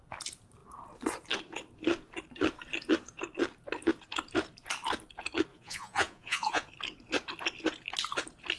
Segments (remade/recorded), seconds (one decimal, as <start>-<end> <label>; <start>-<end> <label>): 0.0-5.5 recorded; 5.5-6.7 remade; 6.7-8.6 recorded